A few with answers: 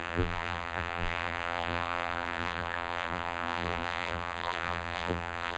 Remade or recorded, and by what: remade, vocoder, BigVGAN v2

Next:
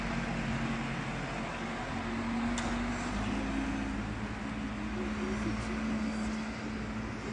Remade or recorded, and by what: recorded